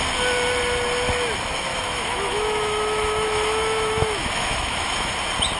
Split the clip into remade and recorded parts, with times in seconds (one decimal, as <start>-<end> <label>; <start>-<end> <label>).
0.0-1.7 recorded; 1.7-5.1 remade; 5.1-5.6 recorded